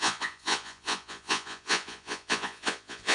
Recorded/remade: remade